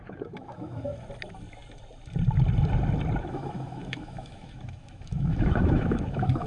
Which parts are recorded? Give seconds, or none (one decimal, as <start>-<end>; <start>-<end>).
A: 0.9-3.2